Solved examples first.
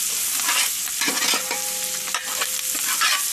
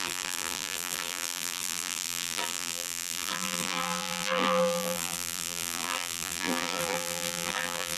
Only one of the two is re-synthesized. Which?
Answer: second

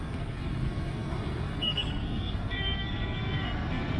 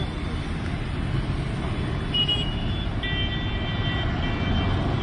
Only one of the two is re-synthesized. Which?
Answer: first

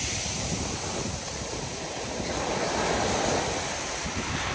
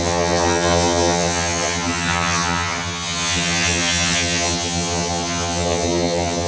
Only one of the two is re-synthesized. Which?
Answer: second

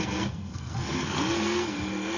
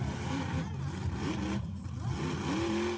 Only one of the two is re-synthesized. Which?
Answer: first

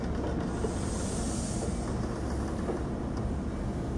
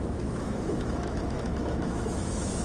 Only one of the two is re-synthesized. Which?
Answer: second